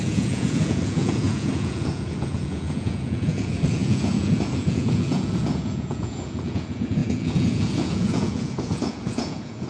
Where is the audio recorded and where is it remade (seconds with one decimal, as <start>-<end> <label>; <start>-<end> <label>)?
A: 0.0-9.7 remade